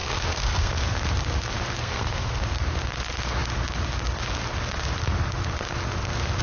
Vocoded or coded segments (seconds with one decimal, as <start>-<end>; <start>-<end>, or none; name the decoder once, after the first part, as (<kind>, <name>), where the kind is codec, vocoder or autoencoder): 0.0-0.7 (codec, SNAC); 1.8-2.4